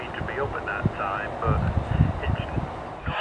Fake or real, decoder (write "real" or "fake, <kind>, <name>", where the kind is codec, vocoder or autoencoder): real